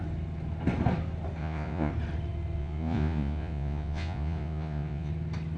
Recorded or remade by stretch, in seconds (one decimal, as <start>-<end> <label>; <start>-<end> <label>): 0.0-1.4 recorded; 1.4-1.9 remade; 1.9-2.6 recorded; 2.6-5.1 remade; 5.1-5.6 recorded